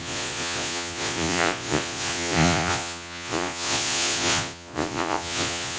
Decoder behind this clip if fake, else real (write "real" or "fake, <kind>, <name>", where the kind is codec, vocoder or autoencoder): fake, vocoder, Vocos